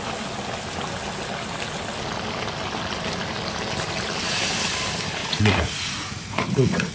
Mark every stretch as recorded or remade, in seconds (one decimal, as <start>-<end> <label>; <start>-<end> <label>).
0.0-5.2 recorded; 5.2-6.9 remade